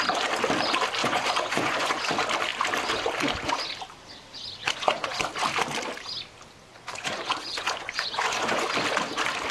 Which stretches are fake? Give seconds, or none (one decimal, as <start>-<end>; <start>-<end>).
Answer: 1.0-2.0; 4.6-5.2; 6.7-8.7